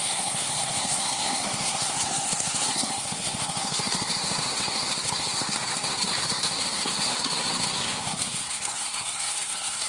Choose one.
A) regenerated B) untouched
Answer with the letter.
A